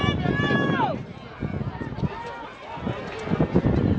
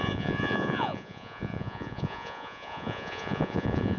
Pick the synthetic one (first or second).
second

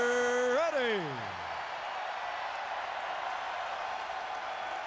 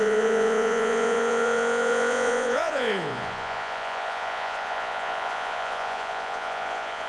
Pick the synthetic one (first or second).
second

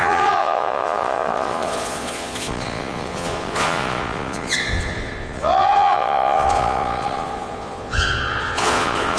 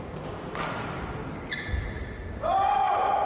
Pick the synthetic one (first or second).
first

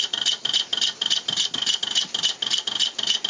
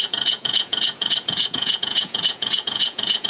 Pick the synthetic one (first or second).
second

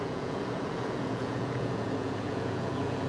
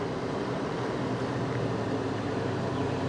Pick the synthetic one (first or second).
first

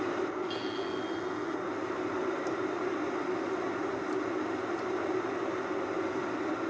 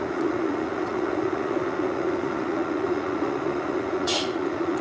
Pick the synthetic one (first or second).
second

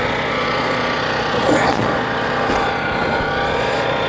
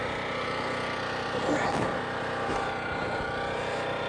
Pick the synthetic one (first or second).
first